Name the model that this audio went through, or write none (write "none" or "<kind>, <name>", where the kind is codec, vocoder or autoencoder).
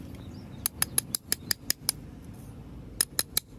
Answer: none